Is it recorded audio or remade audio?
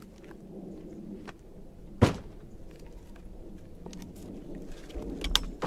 recorded